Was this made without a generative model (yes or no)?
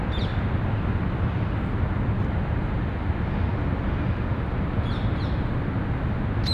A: yes